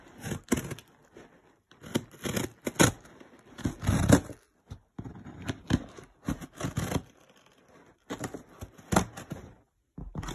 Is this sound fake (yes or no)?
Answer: no